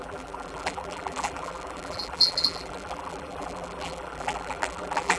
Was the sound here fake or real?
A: fake